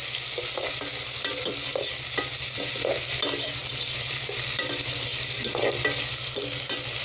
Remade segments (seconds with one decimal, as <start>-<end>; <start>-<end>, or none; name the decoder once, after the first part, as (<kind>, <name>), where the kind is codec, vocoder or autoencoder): none